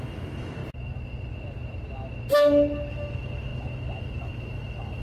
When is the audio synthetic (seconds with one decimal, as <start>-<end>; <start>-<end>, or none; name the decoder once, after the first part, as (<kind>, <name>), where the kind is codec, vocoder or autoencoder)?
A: 0.0-0.6 (autoencoder, DAC-VAE); 2.9-5.0